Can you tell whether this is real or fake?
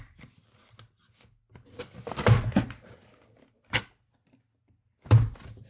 real